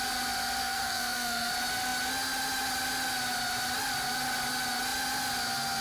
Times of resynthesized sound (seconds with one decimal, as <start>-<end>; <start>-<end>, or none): 0.6-1.5